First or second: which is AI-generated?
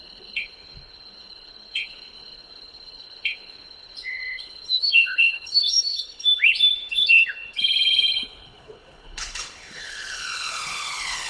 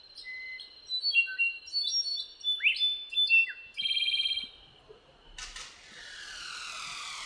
first